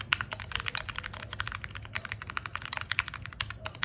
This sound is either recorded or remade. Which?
recorded